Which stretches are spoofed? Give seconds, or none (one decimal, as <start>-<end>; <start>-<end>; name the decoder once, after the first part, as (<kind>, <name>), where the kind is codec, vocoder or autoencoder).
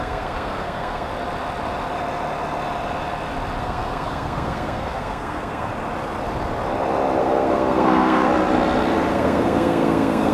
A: 0.0-1.1 (codec, SNAC); 3.6-5.7; 7.2-8.3; 9.1-10.3